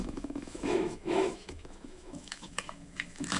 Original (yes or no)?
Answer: no